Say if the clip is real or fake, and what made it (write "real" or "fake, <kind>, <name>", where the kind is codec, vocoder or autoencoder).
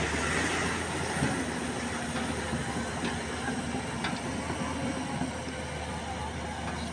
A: real